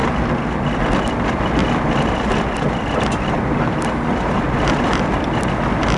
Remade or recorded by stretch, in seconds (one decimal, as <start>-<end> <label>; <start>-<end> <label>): 0.0-6.0 recorded